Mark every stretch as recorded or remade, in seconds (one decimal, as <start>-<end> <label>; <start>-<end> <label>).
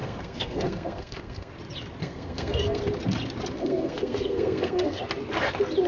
0.0-1.5 remade; 1.5-2.0 recorded; 2.0-2.8 remade; 2.8-3.6 recorded; 3.6-5.0 remade; 5.0-5.9 recorded